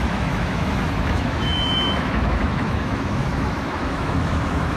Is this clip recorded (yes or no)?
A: no